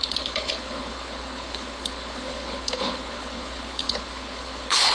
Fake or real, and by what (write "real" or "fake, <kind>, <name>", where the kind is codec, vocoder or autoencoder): fake, codec, HILCodec